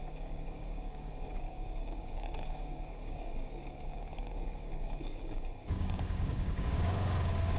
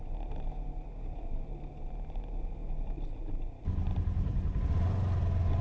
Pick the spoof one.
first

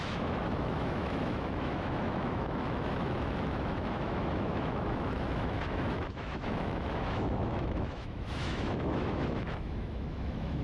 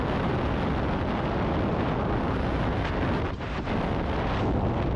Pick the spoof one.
first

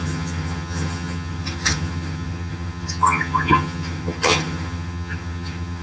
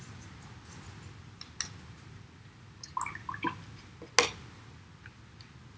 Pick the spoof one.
first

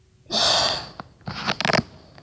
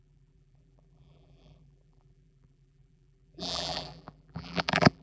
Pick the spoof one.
second